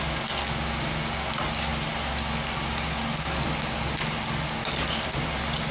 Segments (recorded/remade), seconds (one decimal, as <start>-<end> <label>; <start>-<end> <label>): 0.0-5.7 recorded